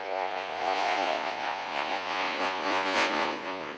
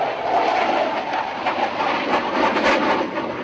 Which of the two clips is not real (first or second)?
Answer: first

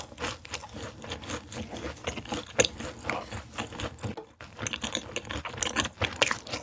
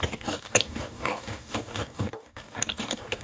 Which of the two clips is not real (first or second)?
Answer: second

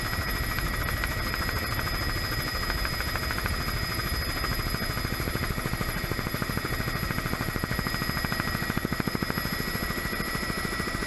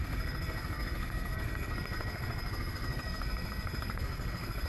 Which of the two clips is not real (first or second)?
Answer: second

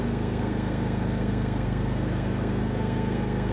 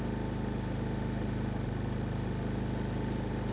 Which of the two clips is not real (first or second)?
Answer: first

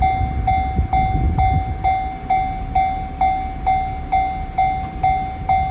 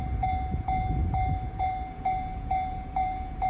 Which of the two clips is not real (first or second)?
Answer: second